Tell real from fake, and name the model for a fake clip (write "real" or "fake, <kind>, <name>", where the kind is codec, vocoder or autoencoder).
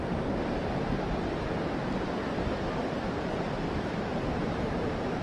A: fake, vocoder, BigVGAN v2